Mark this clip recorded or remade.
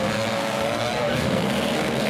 remade